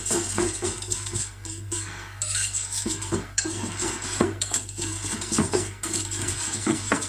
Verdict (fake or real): fake